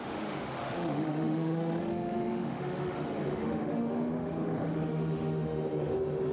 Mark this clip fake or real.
fake